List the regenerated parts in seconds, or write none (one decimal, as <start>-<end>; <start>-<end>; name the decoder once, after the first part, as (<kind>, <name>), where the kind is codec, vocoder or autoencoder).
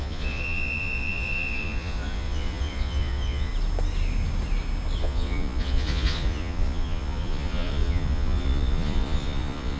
0.0-3.5 (vocoder, Vocos); 5.0-9.8